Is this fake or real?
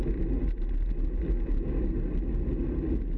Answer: real